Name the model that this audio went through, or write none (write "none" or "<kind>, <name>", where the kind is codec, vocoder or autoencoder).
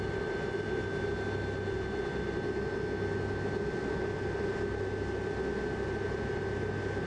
none